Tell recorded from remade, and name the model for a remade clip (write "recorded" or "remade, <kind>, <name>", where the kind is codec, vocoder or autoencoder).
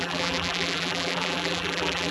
remade, vocoder, BigVGAN v2